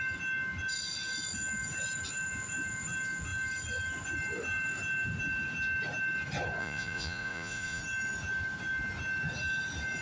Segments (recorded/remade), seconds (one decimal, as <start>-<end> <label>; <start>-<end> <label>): 0.0-6.6 recorded; 6.6-7.8 remade; 7.8-10.0 recorded